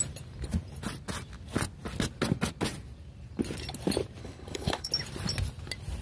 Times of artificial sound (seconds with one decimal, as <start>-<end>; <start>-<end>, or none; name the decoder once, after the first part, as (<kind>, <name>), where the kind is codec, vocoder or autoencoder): 4.2-4.9 (codec, HILCodec)